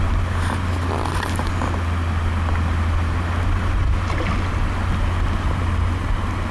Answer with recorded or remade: recorded